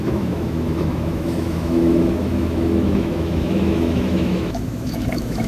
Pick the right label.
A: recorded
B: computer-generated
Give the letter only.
B